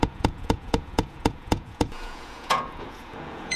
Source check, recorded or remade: remade